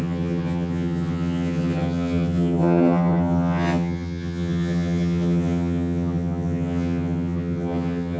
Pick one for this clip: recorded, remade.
remade